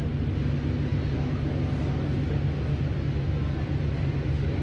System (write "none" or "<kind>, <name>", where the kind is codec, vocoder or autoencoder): none